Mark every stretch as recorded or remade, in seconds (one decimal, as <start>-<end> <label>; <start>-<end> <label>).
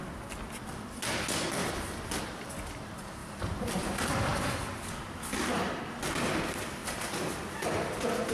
0.0-1.6 recorded; 1.6-2.2 remade; 2.2-3.2 recorded; 3.2-3.8 remade; 3.8-4.3 recorded; 4.3-5.6 remade; 5.6-8.3 recorded